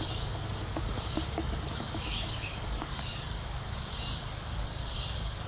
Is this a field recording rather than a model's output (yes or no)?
no